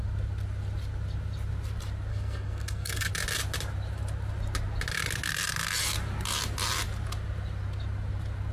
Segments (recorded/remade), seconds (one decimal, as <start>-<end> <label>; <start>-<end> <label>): 0.0-2.1 recorded; 2.1-3.1 remade; 3.1-8.5 recorded